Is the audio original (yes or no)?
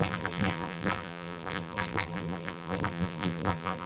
no